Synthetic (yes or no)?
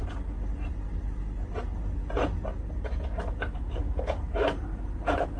no